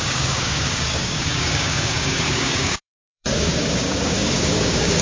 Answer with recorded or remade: remade